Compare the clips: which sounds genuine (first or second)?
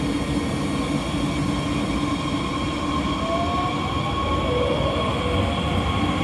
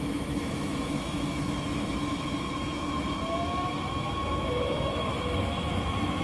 first